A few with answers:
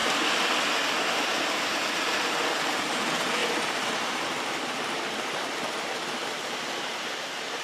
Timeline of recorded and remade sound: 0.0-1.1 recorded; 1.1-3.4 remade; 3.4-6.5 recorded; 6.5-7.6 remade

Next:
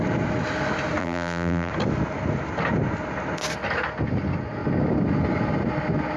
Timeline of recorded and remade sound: 0.0-1.0 recorded; 1.0-1.7 remade; 1.7-6.2 recorded

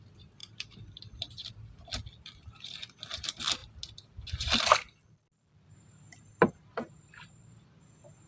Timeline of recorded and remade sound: 0.0-0.4 recorded; 0.4-1.5 remade; 1.5-8.3 recorded

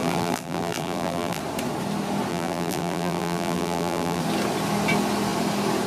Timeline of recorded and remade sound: 0.0-1.4 remade; 1.4-2.3 recorded; 2.3-4.2 remade; 4.2-5.9 recorded

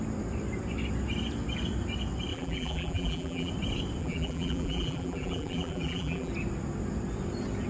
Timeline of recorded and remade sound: 0.0-2.3 recorded; 2.3-3.5 remade; 3.5-4.0 recorded; 4.0-6.3 remade; 6.3-7.7 recorded

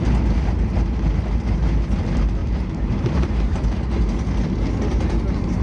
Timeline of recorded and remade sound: 0.0-2.4 recorded; 2.4-3.6 remade; 3.6-5.6 recorded

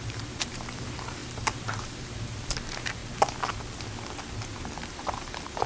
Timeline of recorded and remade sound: 0.0-3.0 remade; 3.0-4.9 recorded; 4.9-5.7 remade

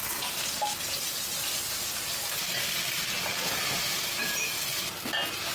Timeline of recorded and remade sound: 0.0-3.3 recorded; 3.3-4.7 remade; 4.7-5.5 recorded